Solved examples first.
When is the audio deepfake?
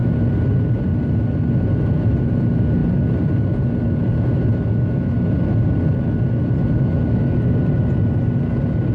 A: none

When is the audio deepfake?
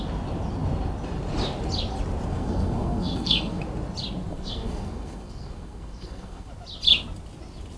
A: 2.3-3.6 (codec, SNAC); 4.3-6.5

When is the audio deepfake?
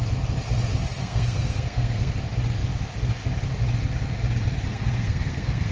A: 1.0-2.1 (codec, SNAC); 4.7-5.7